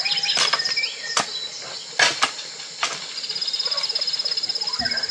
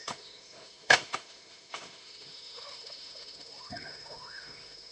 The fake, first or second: second